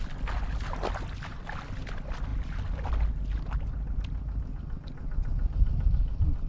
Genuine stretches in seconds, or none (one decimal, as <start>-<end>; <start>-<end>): 0.0-6.5